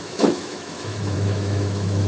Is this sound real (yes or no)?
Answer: no